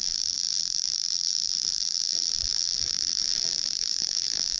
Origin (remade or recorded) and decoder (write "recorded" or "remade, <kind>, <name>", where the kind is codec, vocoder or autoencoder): remade, vocoder, BigVGAN v2